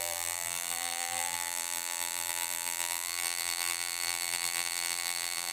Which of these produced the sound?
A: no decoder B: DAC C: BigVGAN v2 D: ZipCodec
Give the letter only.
C